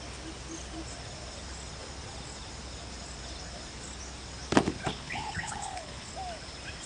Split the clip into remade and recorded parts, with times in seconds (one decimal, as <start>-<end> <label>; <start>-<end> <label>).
0.0-4.9 recorded; 4.9-6.1 remade; 6.1-6.9 recorded